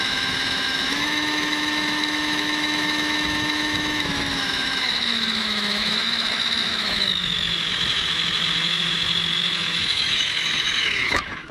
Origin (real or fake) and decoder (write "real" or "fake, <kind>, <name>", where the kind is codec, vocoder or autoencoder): fake, autoencoder, DAC-VAE